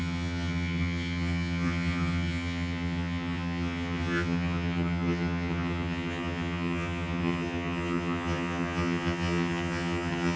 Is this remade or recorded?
remade